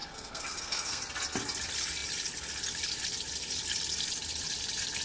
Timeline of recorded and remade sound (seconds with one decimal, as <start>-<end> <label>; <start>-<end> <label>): 0.0-1.0 remade; 1.0-5.0 recorded